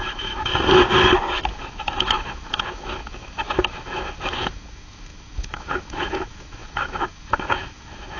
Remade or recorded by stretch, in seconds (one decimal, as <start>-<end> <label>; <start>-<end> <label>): 0.0-0.5 remade; 0.5-1.5 recorded; 1.5-8.2 remade